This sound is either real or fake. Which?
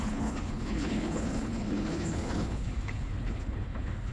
fake